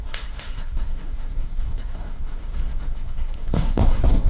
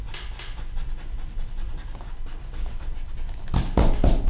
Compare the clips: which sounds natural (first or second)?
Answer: second